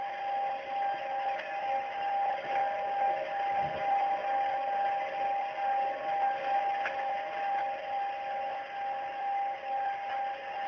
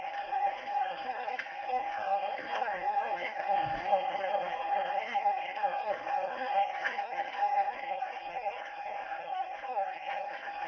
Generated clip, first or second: second